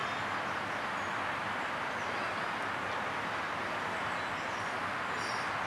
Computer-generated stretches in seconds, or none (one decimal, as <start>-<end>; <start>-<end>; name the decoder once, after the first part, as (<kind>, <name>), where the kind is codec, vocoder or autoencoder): none